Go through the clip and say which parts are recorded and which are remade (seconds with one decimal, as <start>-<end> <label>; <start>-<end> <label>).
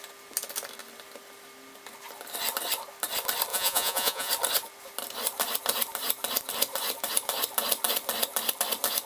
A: 0.0-3.5 recorded; 3.5-4.3 remade; 4.3-9.1 recorded